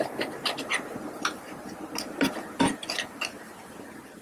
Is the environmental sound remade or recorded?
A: recorded